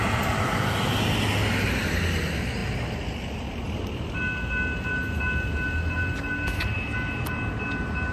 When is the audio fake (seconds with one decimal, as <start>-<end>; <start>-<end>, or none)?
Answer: none